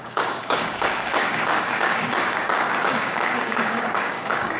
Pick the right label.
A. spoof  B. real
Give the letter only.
A